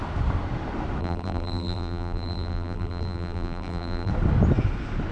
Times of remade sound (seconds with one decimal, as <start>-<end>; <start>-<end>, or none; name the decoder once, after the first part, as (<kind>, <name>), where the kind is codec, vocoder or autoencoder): 1.0-4.1 (vocoder, BigVGAN v2)